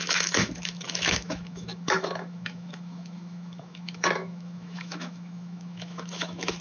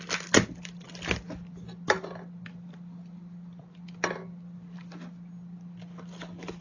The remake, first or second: first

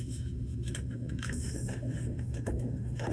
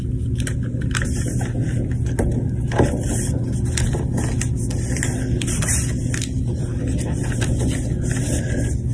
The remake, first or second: first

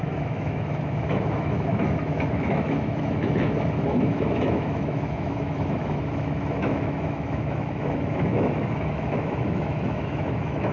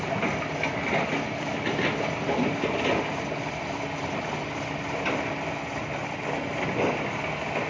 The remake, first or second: first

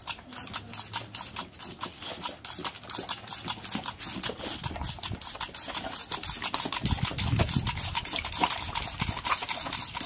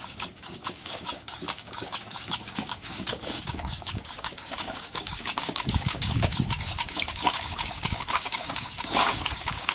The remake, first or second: second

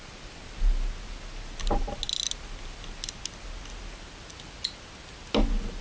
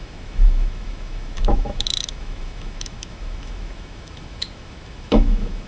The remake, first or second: second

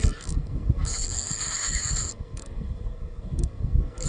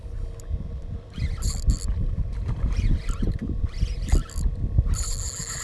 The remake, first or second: first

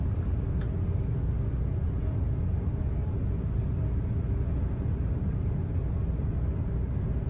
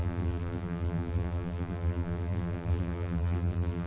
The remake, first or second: second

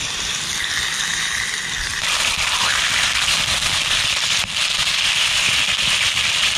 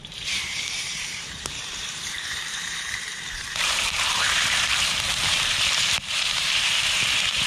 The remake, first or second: second